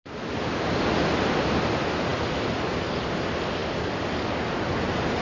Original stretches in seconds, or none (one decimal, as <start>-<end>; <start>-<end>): 0.0-5.2